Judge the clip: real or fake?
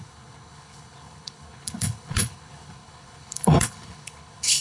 fake